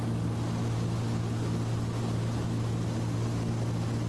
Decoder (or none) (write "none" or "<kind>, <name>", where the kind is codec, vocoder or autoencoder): none